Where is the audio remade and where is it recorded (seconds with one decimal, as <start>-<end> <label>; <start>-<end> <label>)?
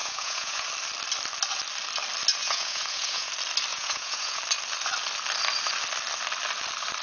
0.0-0.7 remade; 0.7-2.4 recorded; 2.4-3.3 remade; 3.3-3.7 recorded; 3.7-4.4 remade; 4.4-7.0 recorded